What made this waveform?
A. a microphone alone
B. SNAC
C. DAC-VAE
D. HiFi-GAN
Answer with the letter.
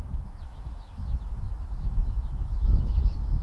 C